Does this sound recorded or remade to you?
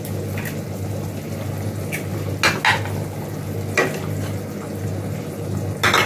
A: recorded